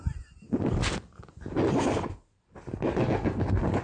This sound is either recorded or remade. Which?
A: recorded